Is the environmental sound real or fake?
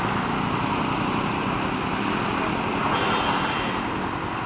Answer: real